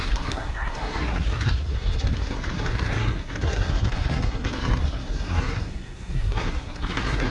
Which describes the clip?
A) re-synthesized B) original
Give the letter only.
A